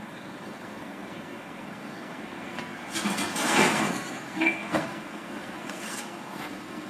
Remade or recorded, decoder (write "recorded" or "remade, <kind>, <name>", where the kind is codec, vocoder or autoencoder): remade, codec, SNAC